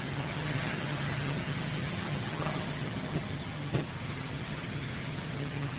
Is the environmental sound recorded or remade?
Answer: remade